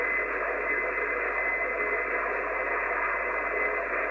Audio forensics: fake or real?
real